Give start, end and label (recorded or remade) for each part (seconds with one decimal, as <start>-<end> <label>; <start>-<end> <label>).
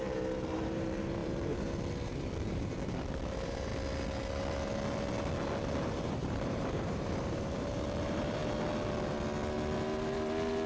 0.0-3.7 remade; 3.7-5.8 recorded; 5.8-8.4 remade; 8.4-10.7 recorded